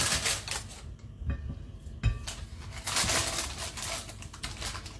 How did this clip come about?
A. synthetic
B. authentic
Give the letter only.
B